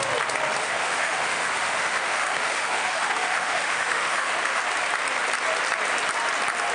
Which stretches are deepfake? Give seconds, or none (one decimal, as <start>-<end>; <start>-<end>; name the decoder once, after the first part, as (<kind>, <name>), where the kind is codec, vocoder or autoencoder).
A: 0.6-4.6 (autoencoder, DAC-VAE)